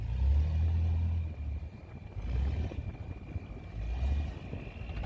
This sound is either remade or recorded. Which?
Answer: recorded